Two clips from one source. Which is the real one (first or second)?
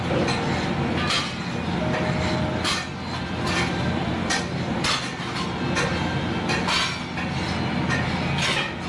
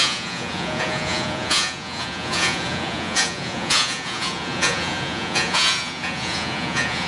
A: first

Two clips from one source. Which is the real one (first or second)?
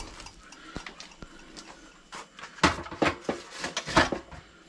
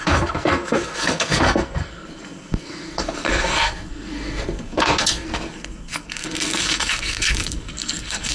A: first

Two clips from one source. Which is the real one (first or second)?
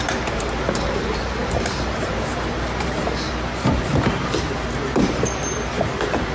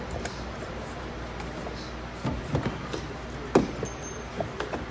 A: second